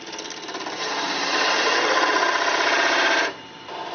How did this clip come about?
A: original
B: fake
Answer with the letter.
A